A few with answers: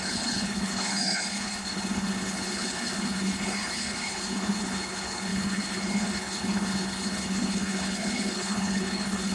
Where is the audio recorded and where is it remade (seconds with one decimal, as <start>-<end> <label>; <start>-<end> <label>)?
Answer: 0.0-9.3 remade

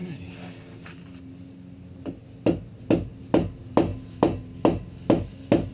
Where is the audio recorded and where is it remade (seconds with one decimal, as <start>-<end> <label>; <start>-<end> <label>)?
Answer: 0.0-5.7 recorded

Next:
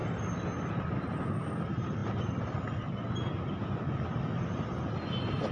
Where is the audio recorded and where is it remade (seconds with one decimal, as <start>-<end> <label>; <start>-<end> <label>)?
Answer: 0.0-5.5 recorded

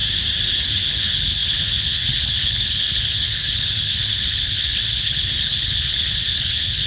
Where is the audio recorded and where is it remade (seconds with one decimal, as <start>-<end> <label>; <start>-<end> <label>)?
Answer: 0.0-0.5 recorded; 0.5-6.9 remade

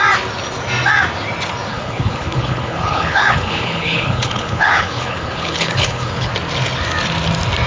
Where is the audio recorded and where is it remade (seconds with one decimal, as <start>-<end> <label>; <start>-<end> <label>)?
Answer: 0.0-1.7 recorded; 1.7-6.3 remade; 6.3-7.7 recorded

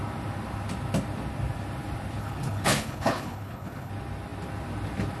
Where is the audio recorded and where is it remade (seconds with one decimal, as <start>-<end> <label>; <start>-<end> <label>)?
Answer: 0.0-2.2 recorded; 2.2-3.9 remade; 3.9-5.2 recorded